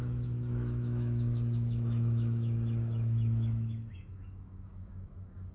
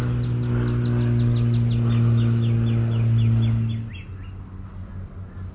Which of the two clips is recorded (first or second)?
second